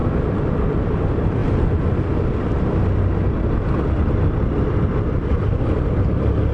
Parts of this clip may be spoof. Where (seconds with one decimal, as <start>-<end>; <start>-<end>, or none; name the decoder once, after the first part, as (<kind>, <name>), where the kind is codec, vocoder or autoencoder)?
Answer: none

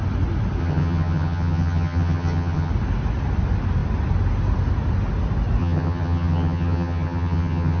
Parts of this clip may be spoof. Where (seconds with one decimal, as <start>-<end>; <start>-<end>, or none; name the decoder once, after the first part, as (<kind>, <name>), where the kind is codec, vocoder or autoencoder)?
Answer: 0.6-2.7 (vocoder, HiFi-GAN); 5.6-7.8

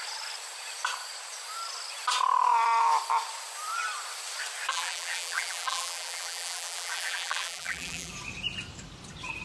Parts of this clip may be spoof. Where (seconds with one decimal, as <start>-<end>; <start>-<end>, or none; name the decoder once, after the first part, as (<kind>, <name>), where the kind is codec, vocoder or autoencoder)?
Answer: 4.7-8.1 (vocoder, BigVGAN v2)

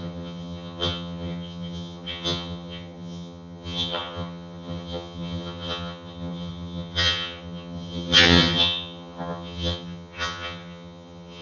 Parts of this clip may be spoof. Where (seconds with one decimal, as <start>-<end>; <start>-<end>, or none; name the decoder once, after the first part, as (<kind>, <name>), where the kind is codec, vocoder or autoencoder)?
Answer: 0.0-11.4 (vocoder, HiFi-GAN)

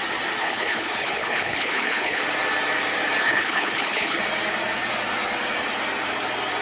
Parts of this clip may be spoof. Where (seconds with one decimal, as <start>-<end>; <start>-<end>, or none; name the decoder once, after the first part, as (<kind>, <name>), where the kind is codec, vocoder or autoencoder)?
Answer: 0.4-2.2 (codec, HILCodec); 3.2-4.2

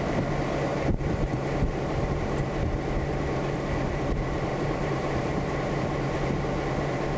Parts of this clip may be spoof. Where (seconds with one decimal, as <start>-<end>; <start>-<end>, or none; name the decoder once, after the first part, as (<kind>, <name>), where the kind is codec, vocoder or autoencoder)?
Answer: 0.7-2.2 (vocoder, BigVGAN v2); 4.5-5.7

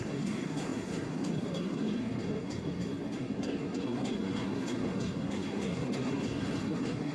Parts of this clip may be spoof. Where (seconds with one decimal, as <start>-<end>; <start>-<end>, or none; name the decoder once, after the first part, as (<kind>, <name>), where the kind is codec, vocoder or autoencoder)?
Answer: 0.0-7.1 (codec, SNAC)

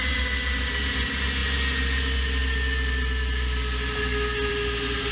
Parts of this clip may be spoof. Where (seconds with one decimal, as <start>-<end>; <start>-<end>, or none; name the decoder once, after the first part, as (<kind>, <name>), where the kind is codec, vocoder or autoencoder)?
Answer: none